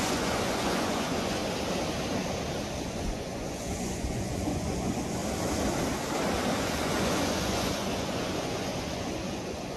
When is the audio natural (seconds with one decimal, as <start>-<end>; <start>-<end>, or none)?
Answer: 1.4-2.8; 5.2-6.6